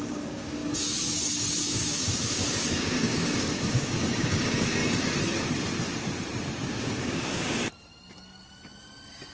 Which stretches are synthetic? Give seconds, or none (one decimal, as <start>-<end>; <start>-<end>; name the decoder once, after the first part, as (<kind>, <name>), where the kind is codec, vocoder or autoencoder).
0.0-4.8 (codec, DAC); 6.8-7.6